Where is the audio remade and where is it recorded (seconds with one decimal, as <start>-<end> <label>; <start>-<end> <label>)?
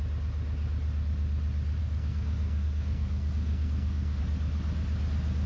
0.0-1.8 recorded; 1.8-4.2 remade; 4.2-5.5 recorded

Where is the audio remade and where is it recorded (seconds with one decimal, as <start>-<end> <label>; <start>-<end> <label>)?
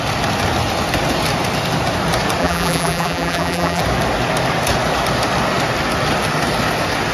0.0-2.4 recorded; 2.4-3.8 remade; 3.8-7.1 recorded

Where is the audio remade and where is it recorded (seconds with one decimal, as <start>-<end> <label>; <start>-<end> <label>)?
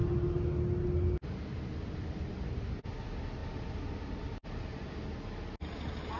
0.0-6.2 recorded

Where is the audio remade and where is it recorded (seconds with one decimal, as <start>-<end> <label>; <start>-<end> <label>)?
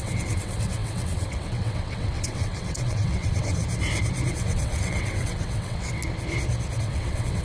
0.0-3.6 remade; 3.6-4.3 recorded; 4.3-6.0 remade; 6.0-6.8 recorded; 6.8-7.4 remade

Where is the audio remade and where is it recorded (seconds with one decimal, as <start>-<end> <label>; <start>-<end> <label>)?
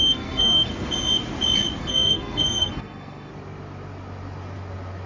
0.0-0.7 remade; 0.7-1.8 recorded; 1.8-3.3 remade; 3.3-5.1 recorded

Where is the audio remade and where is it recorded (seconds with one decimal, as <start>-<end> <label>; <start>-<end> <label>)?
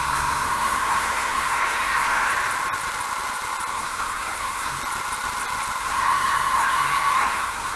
0.0-2.3 remade; 2.3-3.7 recorded; 3.7-4.8 remade; 4.8-5.8 recorded; 5.8-7.8 remade